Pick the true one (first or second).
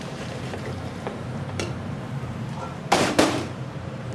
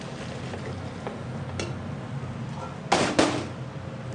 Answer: second